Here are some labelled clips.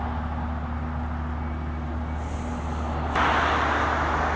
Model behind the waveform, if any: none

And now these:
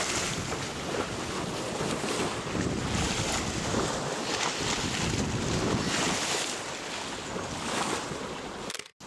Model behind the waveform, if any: none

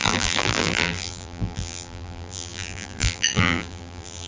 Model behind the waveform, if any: vocoder, BigVGAN v2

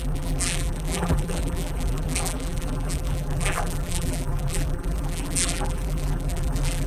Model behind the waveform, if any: vocoder, BigVGAN v2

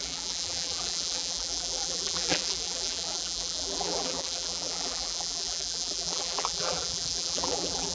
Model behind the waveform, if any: vocoder, BigVGAN v2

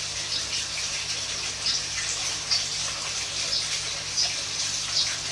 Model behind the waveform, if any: none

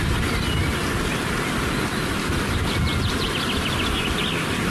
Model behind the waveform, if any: none